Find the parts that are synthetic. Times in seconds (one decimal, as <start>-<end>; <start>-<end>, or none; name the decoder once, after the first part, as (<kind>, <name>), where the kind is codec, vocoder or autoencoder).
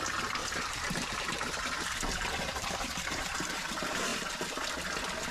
0.4-3.6 (vocoder, BigVGAN v2); 4.1-4.7